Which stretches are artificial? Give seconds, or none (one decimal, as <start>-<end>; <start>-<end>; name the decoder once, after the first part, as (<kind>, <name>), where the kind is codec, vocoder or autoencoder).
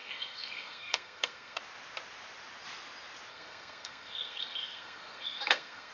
0.0-1.6 (codec, SNAC); 3.3-5.9